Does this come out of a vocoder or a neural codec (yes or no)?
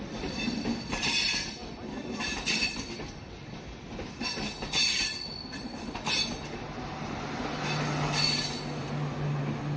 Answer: no